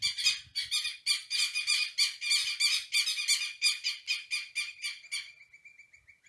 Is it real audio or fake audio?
real